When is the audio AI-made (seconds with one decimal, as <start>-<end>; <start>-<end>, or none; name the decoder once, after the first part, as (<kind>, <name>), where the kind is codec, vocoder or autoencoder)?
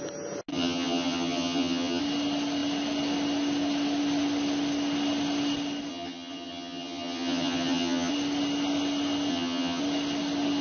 0.5-2.0 (vocoder, HiFi-GAN); 5.9-8.1; 9.3-9.8